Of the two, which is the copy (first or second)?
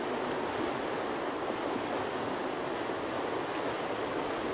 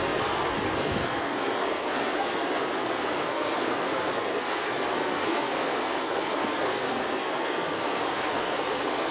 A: second